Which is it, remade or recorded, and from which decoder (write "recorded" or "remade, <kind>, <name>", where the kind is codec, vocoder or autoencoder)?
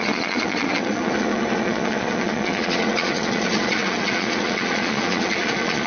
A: remade, vocoder, Vocos